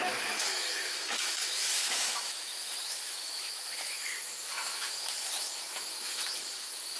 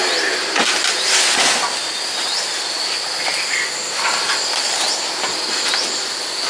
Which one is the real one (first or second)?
second